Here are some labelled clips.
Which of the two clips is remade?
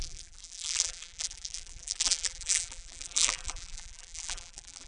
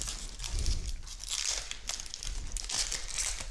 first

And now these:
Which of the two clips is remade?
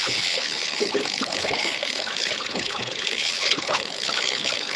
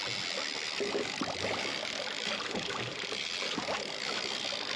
first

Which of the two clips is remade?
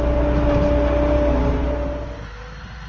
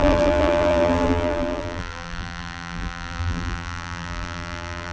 second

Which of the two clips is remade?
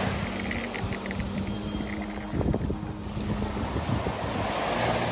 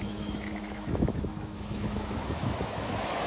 second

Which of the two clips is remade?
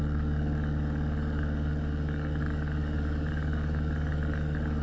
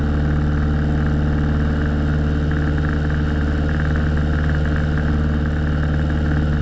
first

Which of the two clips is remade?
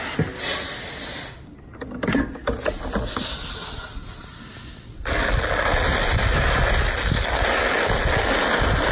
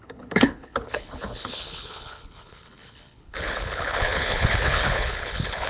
second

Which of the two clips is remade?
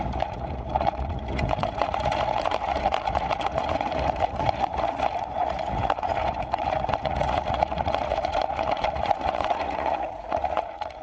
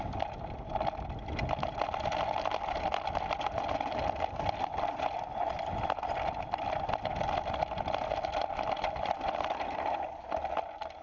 first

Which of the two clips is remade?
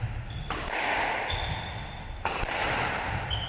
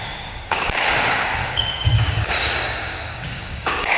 second